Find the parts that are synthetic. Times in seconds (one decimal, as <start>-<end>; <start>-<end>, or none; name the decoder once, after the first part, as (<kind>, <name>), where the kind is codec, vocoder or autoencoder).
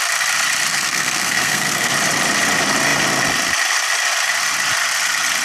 0.7-1.9 (codec, SNAC)